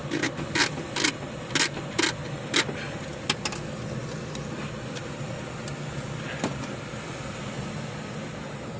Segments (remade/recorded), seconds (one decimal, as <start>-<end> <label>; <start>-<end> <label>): 0.0-8.8 recorded